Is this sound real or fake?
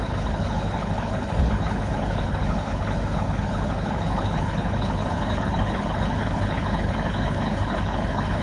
fake